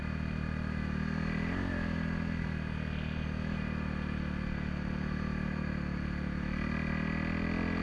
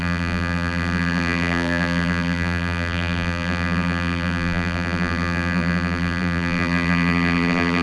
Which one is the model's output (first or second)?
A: second